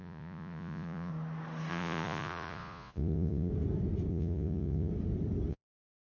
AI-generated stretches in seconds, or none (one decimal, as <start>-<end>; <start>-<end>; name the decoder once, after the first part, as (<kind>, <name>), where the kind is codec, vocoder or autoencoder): 0.0-1.1 (vocoder, Vocos); 1.7-3.5; 4.1-4.9; 5.5-6.1